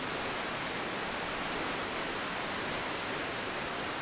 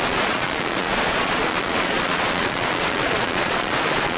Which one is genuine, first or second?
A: first